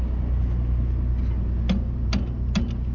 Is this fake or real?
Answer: real